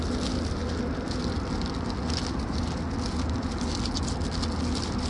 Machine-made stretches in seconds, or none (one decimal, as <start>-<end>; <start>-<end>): none

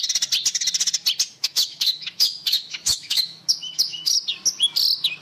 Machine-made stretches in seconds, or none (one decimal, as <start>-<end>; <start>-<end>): 1.4-4.2